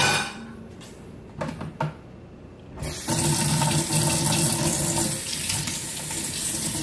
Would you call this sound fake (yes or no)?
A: no